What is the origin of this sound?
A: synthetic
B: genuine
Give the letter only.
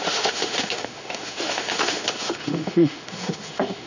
A